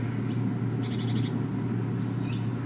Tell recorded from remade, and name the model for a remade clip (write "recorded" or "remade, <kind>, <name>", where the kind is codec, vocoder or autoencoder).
recorded